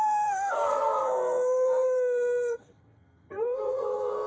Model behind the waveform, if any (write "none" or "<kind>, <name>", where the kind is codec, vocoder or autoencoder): codec, SNAC